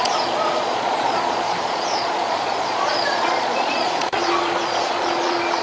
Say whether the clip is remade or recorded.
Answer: remade